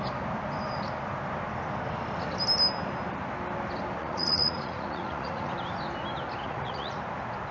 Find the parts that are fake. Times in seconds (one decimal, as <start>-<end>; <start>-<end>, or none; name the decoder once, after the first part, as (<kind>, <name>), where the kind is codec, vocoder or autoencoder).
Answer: 4.0-5.5 (vocoder, Vocos); 6.4-7.0